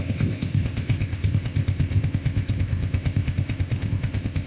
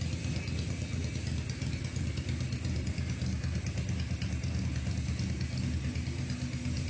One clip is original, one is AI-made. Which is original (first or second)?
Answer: second